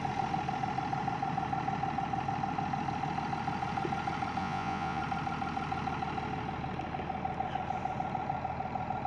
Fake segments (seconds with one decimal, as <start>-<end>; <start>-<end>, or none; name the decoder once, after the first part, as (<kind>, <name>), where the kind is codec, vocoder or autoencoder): 4.4-5.0 (vocoder, Vocos)